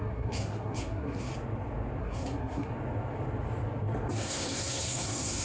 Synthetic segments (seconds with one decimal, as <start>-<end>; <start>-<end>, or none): 0.0-1.3; 2.0-2.7; 4.1-5.4